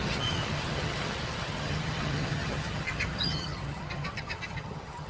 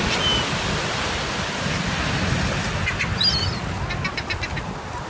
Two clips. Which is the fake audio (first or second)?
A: first